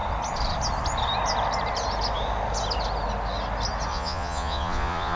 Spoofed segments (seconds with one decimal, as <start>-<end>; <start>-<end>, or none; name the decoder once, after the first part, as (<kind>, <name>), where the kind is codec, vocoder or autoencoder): 3.9-5.2 (vocoder, Vocos)